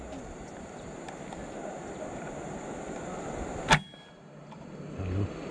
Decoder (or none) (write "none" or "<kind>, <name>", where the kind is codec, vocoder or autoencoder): none